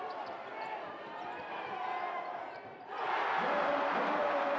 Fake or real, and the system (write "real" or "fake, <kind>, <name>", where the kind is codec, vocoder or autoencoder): real